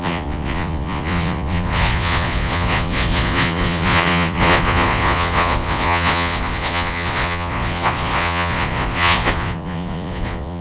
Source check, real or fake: fake